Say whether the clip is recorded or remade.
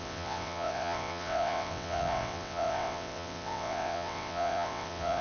remade